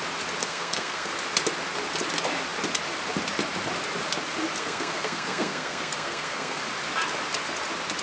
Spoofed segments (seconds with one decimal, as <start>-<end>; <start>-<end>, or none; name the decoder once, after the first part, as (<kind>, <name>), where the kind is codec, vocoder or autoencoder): 0.4-1.1 (codec, SNAC); 4.6-6.6